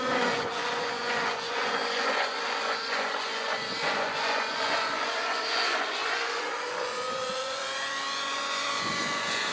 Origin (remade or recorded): remade